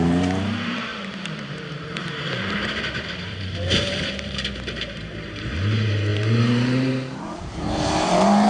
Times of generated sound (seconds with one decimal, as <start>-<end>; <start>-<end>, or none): 0.0-8.5